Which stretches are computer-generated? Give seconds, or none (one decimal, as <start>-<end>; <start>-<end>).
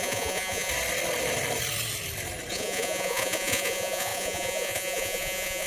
0.0-0.7; 2.5-5.7